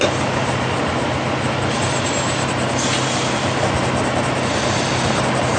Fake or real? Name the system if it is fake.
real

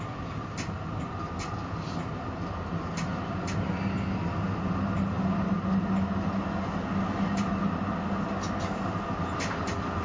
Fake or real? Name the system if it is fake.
real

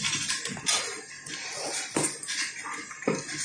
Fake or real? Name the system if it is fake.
real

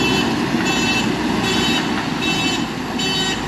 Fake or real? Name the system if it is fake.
real